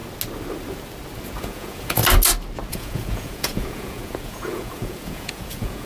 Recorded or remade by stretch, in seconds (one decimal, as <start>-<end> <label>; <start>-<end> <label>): 0.0-1.4 recorded; 1.4-2.0 remade; 2.0-2.7 recorded; 2.7-5.9 remade